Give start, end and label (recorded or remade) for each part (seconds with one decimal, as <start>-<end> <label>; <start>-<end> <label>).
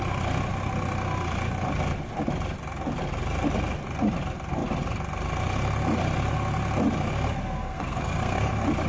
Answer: 0.0-7.6 recorded; 7.6-8.5 remade; 8.5-8.9 recorded